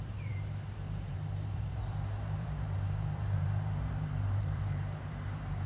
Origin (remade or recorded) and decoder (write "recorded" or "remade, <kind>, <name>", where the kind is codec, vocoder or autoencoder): remade, vocoder, BigVGAN v2